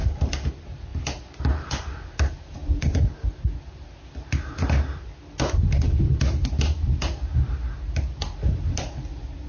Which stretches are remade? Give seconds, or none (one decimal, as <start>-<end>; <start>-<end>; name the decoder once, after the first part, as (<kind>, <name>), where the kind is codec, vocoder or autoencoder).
none